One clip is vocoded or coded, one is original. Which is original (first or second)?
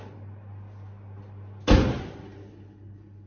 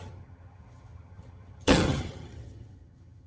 first